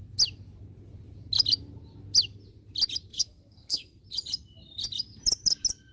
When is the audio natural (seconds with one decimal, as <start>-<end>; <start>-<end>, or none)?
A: 0.0-3.1; 4.0-5.9